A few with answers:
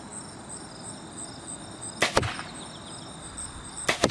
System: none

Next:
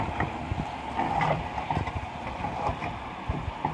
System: none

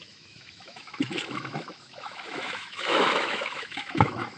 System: autoencoder, DAC-VAE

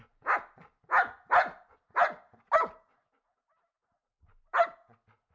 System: none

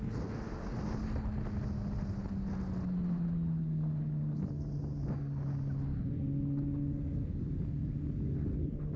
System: none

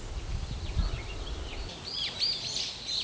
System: none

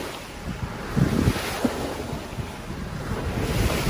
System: none